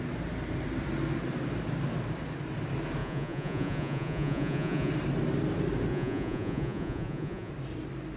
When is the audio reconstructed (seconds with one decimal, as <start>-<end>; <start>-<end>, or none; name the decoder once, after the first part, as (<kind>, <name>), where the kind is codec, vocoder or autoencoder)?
3.0-4.9 (vocoder, Vocos); 5.9-7.5